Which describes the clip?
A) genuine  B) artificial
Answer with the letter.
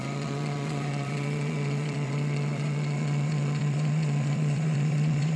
B